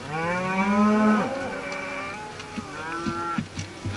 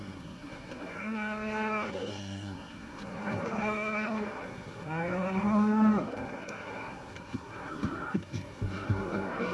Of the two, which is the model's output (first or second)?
second